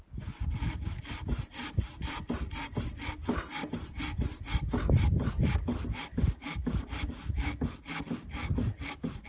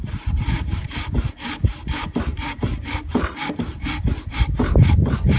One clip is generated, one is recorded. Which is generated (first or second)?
second